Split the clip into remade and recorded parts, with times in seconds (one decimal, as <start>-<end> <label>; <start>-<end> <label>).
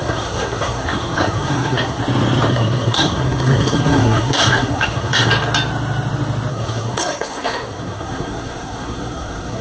0.0-2.0 remade; 2.0-2.5 recorded; 2.5-5.3 remade; 5.3-6.5 recorded; 6.5-9.6 remade